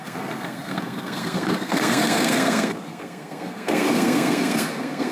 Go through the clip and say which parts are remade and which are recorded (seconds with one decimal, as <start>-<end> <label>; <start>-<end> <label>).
0.0-5.1 remade